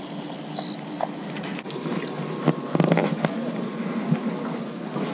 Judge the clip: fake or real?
real